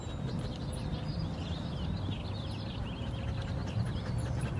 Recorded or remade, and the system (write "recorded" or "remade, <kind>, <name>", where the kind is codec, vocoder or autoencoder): recorded